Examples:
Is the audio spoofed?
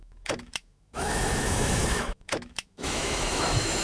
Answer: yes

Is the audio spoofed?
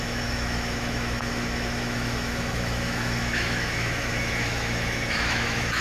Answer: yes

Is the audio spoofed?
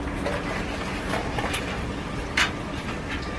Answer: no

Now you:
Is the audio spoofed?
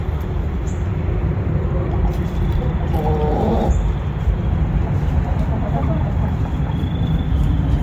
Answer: no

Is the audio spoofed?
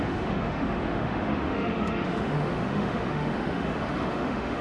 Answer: yes